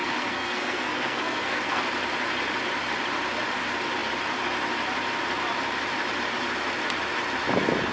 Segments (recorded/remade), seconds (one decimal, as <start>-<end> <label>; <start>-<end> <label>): 0.0-1.8 remade; 1.8-7.9 recorded